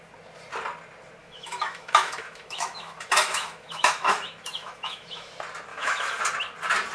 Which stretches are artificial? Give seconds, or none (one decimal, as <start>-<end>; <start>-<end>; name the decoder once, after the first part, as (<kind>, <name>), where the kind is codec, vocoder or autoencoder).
1.2-5.3 (autoencoder, DAC-VAE); 5.7-6.2